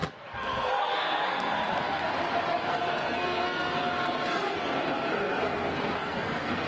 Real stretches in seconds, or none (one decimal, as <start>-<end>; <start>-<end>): 2.1-2.5